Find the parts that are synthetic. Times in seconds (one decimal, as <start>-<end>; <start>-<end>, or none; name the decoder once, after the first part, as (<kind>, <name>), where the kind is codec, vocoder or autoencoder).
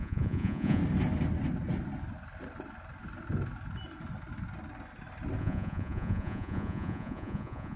0.0-0.8 (vocoder, Vocos); 5.4-7.8